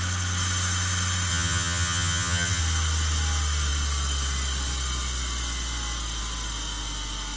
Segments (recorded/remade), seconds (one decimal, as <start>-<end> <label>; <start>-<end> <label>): 0.0-1.3 recorded; 1.3-2.6 remade; 2.6-7.4 recorded